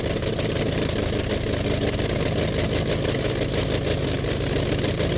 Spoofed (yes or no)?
no